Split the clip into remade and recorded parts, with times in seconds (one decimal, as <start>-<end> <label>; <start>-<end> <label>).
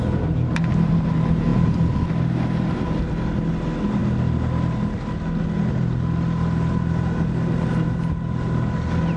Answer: 0.0-1.5 recorded; 1.5-2.1 remade; 2.1-9.2 recorded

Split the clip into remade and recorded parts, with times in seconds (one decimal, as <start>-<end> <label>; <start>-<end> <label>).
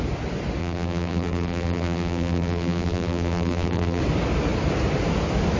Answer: 0.0-0.6 recorded; 0.6-4.0 remade; 4.0-5.6 recorded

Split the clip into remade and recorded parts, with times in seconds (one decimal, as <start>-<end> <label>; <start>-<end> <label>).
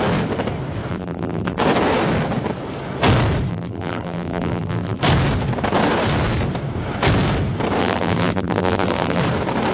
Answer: 0.0-0.9 recorded; 0.9-1.6 remade; 1.6-3.5 recorded; 3.5-5.0 remade; 5.0-7.8 recorded; 7.8-9.2 remade; 9.2-9.7 recorded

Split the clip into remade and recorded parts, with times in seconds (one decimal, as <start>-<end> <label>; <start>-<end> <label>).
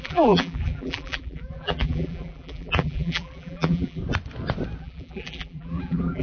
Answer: 0.0-4.0 remade; 4.0-4.8 recorded; 4.8-6.2 remade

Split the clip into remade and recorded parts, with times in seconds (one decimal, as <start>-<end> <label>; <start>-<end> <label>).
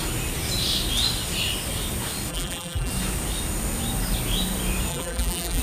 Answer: 0.0-2.3 recorded; 2.3-2.9 remade; 2.9-4.9 recorded; 4.9-5.6 remade